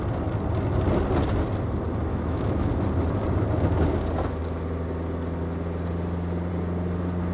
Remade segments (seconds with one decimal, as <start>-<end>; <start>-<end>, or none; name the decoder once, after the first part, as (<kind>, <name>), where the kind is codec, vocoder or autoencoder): 2.1-2.7 (autoencoder, DAC-VAE)